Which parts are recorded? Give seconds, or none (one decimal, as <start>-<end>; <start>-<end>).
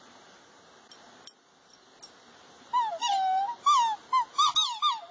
0.4-2.9; 3.4-4.3